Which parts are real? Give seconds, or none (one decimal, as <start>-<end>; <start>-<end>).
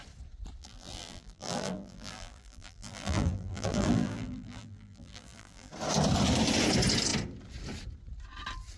0.0-0.6; 5.7-8.8